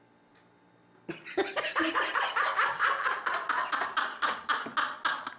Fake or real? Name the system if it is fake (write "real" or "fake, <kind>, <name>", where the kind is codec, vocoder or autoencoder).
real